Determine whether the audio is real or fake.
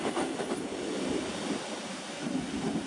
real